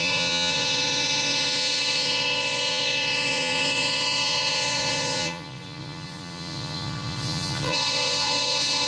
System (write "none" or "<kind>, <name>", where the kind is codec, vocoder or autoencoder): vocoder, Vocos